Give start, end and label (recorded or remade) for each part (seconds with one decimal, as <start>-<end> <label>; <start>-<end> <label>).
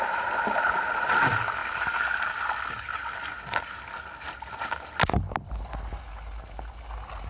0.0-7.3 recorded